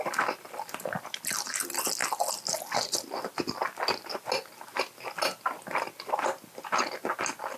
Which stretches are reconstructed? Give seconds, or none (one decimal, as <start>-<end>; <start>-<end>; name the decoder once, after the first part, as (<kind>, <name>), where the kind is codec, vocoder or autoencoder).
none